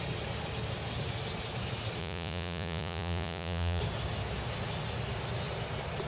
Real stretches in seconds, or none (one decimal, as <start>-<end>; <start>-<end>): 0.0-2.0; 3.8-6.1